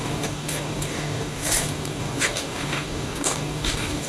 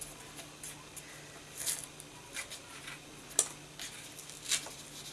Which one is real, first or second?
second